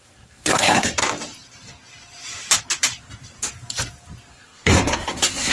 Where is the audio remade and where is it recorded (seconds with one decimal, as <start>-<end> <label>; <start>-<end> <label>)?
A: 0.0-1.0 remade; 1.0-4.3 recorded; 4.3-5.5 remade

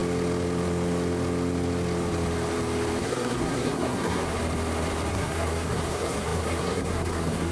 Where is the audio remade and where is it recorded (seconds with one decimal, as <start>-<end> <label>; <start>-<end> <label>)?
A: 0.0-3.0 recorded; 3.0-4.4 remade; 4.4-5.1 recorded; 5.1-7.5 remade

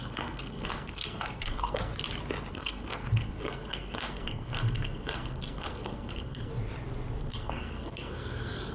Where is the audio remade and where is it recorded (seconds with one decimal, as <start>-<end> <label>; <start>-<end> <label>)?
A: 0.0-1.9 remade; 1.9-2.5 recorded; 2.5-6.5 remade; 6.5-7.2 recorded; 7.2-8.7 remade